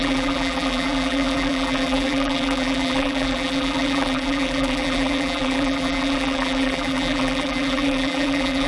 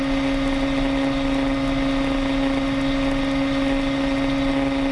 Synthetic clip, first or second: first